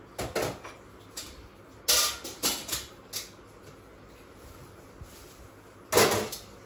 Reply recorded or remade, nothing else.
recorded